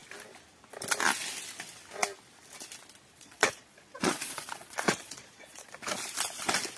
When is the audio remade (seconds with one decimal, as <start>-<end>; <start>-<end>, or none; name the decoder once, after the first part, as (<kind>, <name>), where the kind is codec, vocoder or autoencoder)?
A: 3.1-5.7 (vocoder, Vocos)